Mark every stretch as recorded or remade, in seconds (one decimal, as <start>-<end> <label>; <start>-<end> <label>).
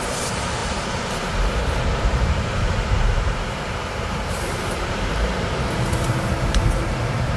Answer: 0.0-7.4 remade